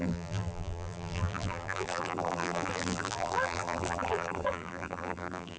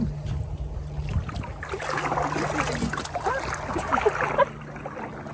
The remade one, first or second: first